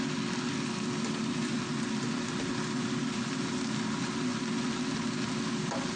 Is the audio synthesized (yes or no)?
no